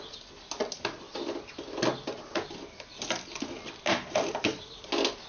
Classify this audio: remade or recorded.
recorded